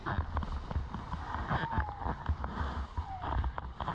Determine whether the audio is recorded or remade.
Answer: recorded